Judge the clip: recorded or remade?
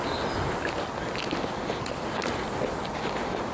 recorded